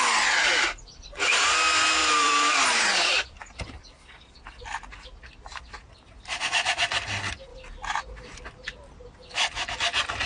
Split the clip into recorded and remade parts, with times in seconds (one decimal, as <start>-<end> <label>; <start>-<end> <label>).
0.0-2.0 recorded; 2.0-3.4 remade; 3.4-10.3 recorded